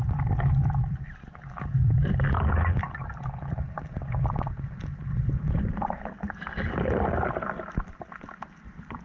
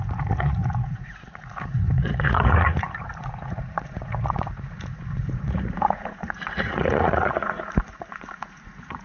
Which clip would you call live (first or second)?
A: first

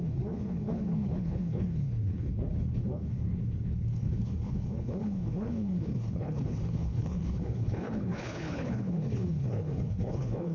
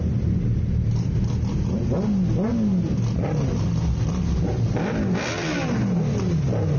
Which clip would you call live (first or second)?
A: second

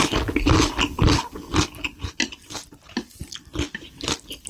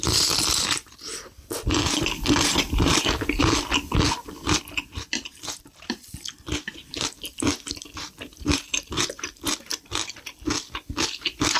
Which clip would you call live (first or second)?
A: first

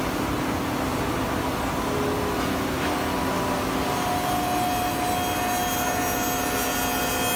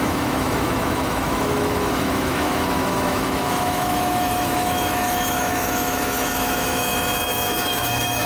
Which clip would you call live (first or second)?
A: first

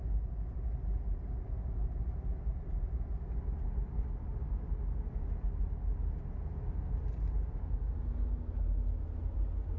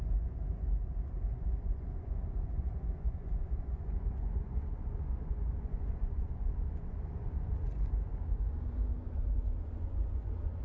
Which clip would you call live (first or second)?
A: first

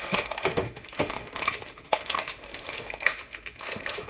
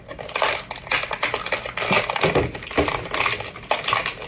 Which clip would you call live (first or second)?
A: second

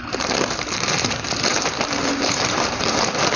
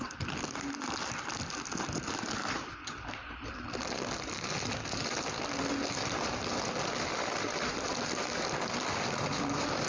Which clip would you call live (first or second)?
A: second